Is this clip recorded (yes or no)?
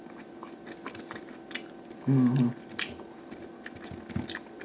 yes